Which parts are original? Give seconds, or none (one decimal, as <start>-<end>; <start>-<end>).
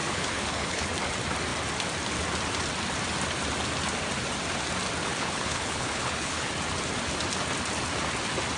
0.9-5.0; 6.5-8.6